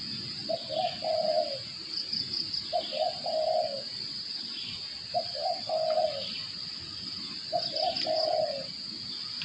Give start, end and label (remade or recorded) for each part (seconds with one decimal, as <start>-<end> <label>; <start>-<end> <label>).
0.0-9.4 recorded